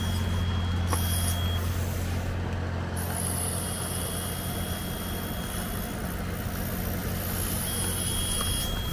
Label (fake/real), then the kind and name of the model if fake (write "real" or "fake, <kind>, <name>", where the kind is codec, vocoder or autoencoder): real